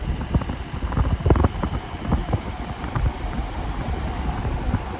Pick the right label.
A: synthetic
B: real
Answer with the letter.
B